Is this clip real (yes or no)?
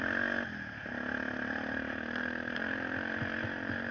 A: yes